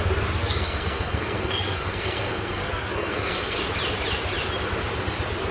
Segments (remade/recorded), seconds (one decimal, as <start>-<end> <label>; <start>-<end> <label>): 0.0-0.4 recorded; 0.4-3.6 remade; 3.6-5.5 recorded